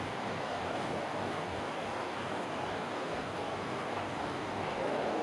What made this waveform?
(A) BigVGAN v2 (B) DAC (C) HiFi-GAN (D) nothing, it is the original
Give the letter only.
B